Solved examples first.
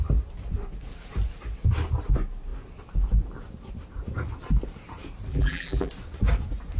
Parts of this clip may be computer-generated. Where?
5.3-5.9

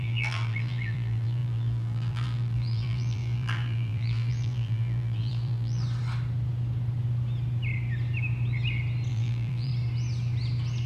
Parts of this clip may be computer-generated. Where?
0.0-5.8; 9.1-9.7

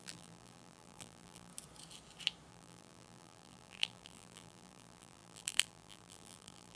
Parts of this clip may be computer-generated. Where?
0.0-1.5; 2.5-6.8

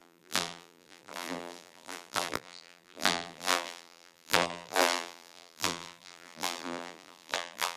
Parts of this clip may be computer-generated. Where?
0.0-7.8

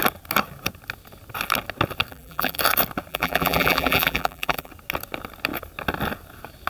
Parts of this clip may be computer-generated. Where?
2.1-2.6; 3.1-4.7

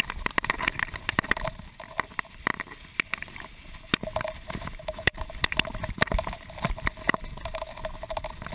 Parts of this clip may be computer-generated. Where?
0.0-2.5; 4.5-8.5

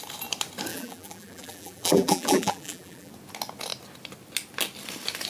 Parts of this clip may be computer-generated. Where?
0.7-3.1